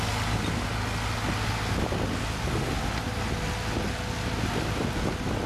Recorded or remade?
recorded